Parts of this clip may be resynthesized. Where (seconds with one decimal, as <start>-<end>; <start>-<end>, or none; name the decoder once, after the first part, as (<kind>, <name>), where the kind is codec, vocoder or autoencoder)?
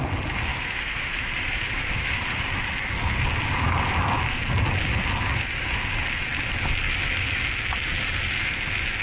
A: 0.5-2.2 (autoencoder, DAC-VAE)